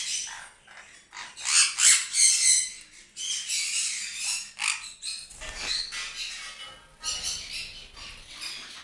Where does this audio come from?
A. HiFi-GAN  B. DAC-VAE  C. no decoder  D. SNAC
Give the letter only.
C